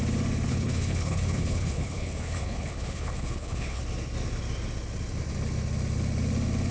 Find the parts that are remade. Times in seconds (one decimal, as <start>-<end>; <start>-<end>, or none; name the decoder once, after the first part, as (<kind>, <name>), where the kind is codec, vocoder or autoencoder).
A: 0.5-3.8 (codec, HILCodec)